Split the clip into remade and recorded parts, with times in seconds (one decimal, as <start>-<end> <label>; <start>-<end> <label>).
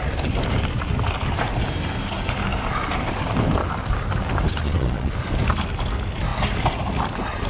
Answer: 0.0-4.6 recorded; 4.6-5.1 remade; 5.1-7.5 recorded